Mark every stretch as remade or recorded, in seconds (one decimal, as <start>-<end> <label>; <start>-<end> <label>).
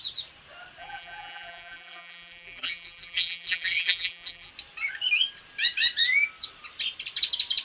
0.0-0.8 recorded; 0.8-4.5 remade; 4.5-7.6 recorded